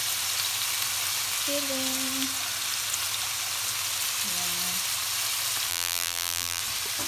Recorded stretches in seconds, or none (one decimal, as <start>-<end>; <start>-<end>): 0.0-5.7; 6.6-7.1